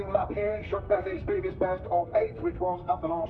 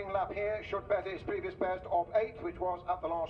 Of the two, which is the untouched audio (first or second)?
second